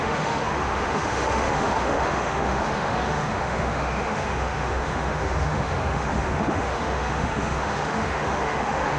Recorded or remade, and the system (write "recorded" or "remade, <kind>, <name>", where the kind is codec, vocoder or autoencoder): remade, autoencoder, DAC-VAE